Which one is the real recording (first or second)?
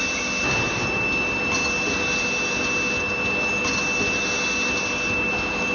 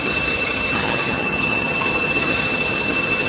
first